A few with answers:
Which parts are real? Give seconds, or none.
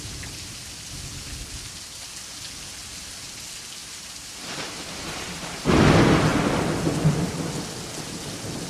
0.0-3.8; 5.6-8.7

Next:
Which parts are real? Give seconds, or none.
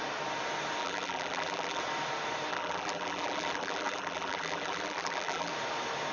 0.0-0.8; 1.8-2.5; 5.5-6.1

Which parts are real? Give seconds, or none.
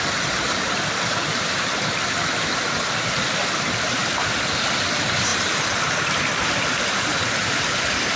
none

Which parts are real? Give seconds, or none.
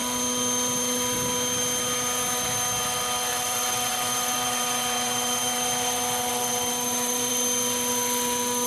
0.0-3.3; 7.3-8.7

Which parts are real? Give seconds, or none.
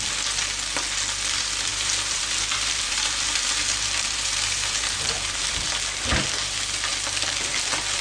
0.0-1.7; 5.7-8.0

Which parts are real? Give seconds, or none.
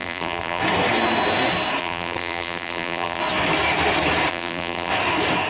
0.6-1.8; 3.2-4.3; 4.9-5.5